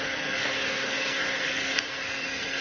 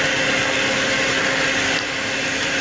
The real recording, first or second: second